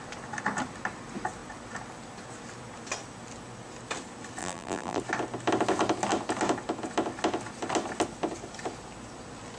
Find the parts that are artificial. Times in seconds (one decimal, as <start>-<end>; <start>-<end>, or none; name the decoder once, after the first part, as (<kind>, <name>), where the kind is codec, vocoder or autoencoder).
4.4-5.0 (vocoder, BigVGAN v2)

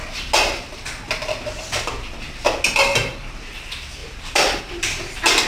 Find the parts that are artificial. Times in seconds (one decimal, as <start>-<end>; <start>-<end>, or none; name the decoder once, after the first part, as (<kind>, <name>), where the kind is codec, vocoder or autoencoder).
4.0-4.6 (vocoder, BigVGAN v2)

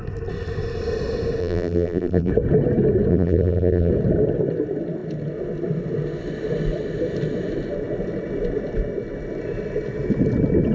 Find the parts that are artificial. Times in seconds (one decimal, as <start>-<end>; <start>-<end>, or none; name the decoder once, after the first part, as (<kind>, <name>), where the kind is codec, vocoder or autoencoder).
1.4-2.3 (vocoder, BigVGAN v2); 3.1-3.9